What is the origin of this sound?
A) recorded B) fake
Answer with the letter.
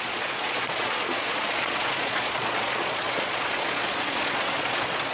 B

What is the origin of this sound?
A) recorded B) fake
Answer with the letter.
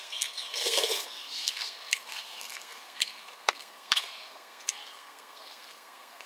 B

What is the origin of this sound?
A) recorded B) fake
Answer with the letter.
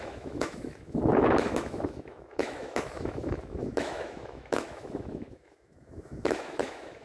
B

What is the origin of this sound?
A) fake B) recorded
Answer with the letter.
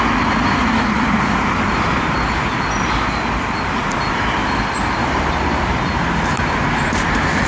B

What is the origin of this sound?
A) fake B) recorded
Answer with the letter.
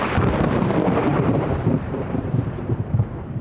A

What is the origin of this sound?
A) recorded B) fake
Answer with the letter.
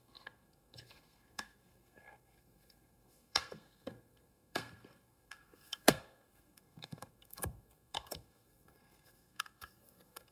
B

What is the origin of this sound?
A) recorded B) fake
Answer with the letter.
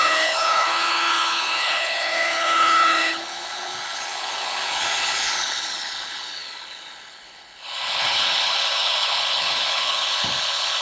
B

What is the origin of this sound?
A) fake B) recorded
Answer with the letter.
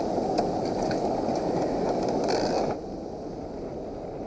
B